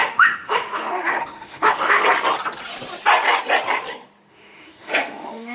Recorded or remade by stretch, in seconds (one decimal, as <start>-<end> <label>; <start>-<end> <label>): 0.0-2.0 remade; 2.0-4.3 recorded; 4.3-5.5 remade